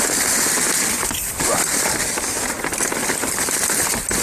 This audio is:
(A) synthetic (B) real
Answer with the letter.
B